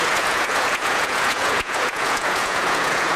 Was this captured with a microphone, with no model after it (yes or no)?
no